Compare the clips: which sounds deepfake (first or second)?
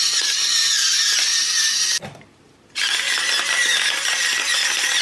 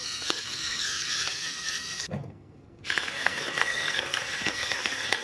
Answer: second